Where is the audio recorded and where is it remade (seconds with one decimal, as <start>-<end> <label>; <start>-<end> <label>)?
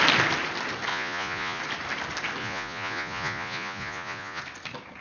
0.0-0.9 recorded; 0.9-1.6 remade; 1.6-2.4 recorded; 2.4-4.4 remade; 4.4-5.0 recorded